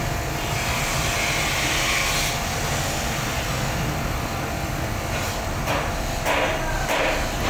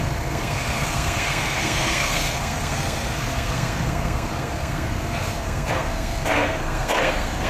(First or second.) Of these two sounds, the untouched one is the first